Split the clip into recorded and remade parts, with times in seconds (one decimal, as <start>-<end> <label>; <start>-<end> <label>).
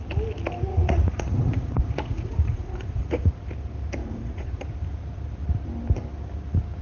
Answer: 0.0-0.7 recorded; 0.7-3.3 remade; 3.3-4.0 recorded; 4.0-4.6 remade; 4.6-6.8 recorded